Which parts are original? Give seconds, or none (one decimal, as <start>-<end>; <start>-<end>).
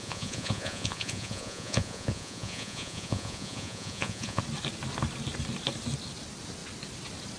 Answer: 4.4-7.4